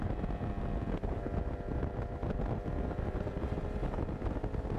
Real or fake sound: real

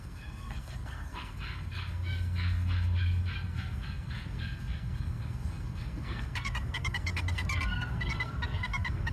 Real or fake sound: fake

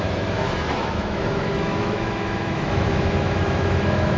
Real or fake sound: fake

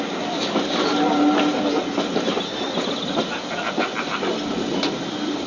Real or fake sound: real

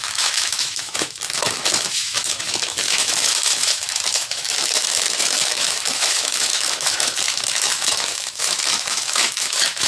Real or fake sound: fake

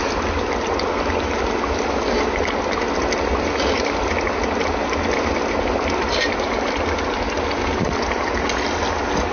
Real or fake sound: real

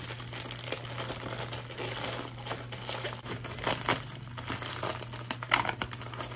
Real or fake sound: real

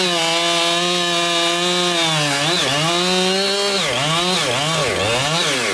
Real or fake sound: real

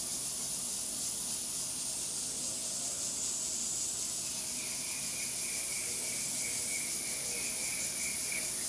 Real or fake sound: real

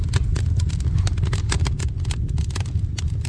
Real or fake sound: real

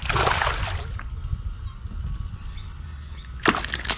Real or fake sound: real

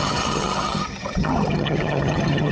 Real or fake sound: fake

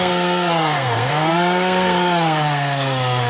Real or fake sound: fake